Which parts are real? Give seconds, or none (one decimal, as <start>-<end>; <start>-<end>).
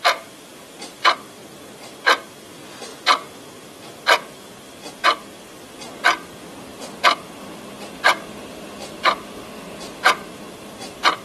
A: 0.0-11.2